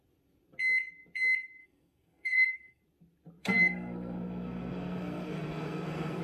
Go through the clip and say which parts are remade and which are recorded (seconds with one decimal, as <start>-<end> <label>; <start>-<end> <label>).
0.0-1.6 recorded; 1.6-2.8 remade; 2.8-3.4 recorded; 3.4-6.2 remade